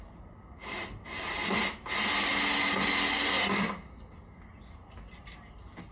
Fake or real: real